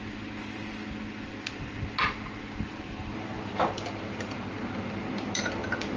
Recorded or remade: recorded